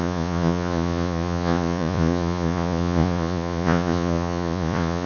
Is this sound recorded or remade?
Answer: remade